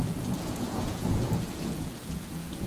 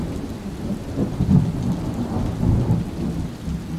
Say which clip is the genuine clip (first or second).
second